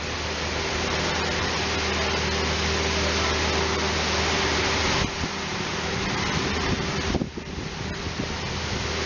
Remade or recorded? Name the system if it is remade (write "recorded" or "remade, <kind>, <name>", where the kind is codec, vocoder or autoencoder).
recorded